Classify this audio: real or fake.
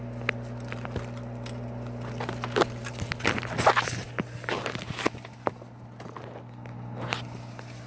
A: real